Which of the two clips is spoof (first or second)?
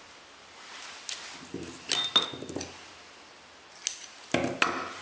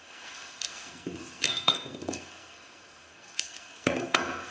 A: second